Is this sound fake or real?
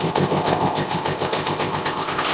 fake